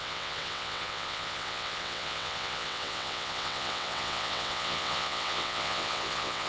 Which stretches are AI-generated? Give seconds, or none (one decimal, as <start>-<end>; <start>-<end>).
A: 0.0-6.5